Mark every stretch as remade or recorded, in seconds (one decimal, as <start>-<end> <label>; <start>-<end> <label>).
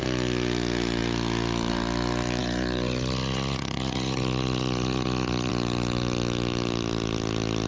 0.0-2.4 recorded; 2.4-5.5 remade; 5.5-7.7 recorded